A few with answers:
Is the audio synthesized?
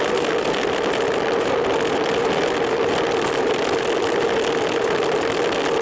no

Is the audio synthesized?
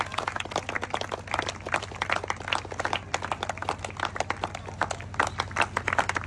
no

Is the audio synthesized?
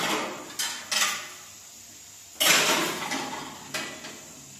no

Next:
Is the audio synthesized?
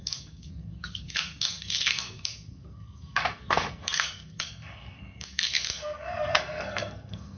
yes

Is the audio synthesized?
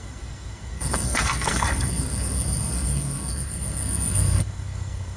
yes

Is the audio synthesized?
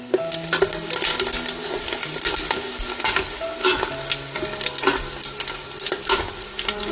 no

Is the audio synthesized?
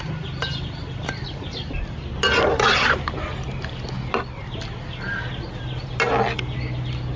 no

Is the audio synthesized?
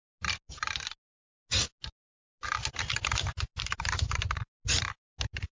no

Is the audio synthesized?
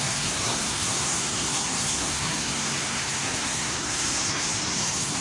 yes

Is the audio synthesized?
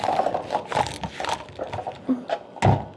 no